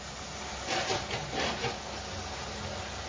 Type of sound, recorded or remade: recorded